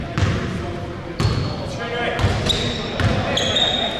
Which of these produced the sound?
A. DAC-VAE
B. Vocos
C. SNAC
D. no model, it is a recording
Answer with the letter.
D